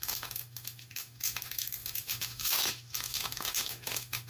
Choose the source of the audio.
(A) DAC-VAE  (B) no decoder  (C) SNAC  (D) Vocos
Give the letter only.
A